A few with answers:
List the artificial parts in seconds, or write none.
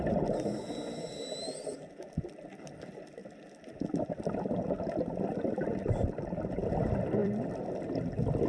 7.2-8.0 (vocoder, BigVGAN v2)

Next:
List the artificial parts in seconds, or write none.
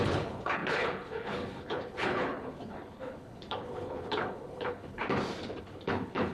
0.0-5.0 (codec, HILCodec); 5.6-6.3